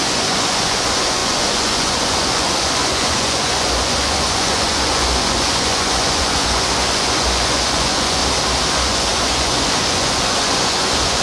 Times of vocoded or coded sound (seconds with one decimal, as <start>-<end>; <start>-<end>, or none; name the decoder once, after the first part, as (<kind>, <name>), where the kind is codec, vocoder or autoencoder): 0.0-8.2 (vocoder, Vocos); 8.7-11.2